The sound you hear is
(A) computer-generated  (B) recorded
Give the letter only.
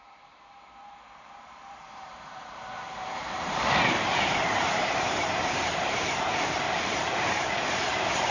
A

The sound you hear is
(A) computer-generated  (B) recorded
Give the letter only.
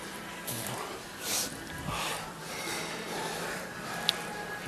A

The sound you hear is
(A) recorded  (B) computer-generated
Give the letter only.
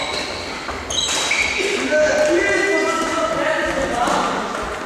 A